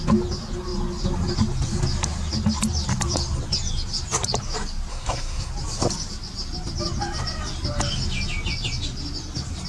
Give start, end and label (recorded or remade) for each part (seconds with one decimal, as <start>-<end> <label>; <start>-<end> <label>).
0.0-4.9 recorded; 4.9-5.5 remade; 5.5-9.7 recorded